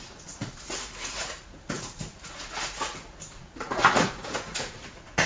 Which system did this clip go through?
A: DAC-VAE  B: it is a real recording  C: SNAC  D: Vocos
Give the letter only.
D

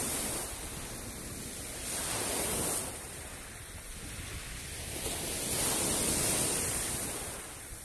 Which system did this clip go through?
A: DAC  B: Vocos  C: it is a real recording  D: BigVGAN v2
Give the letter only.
C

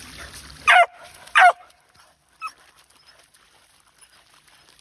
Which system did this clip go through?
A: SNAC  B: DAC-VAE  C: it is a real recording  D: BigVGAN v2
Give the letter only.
C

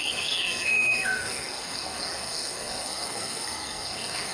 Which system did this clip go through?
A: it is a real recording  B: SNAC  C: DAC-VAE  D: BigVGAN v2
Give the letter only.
B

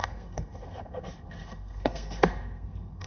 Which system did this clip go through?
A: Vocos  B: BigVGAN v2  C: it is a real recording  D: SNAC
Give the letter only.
D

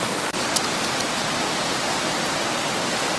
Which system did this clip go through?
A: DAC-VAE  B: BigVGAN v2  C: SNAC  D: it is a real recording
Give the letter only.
B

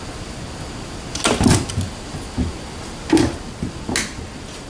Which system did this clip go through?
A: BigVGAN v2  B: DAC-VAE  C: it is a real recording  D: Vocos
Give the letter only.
C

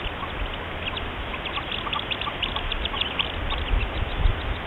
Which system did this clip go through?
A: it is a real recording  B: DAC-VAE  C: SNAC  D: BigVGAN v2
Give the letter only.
A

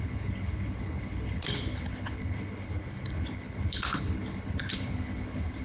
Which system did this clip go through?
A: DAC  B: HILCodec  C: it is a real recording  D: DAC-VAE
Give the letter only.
B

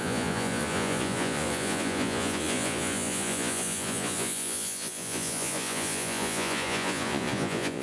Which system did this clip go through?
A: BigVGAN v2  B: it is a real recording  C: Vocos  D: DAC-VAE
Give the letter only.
C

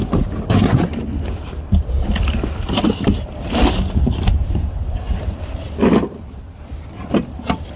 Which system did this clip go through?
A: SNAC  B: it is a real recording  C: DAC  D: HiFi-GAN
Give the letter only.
B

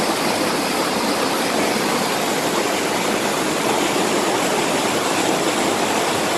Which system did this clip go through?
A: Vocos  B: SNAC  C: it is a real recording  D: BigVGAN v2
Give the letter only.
C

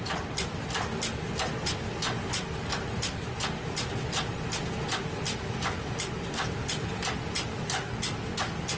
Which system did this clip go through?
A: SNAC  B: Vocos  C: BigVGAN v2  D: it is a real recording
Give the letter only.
D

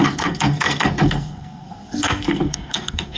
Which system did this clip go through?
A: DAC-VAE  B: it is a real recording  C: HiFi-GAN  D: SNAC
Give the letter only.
D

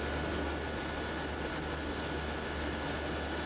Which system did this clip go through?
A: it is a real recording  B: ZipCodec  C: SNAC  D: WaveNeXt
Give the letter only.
A